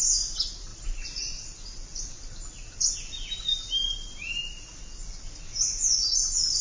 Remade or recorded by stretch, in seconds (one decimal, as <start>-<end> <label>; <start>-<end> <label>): 0.0-6.6 recorded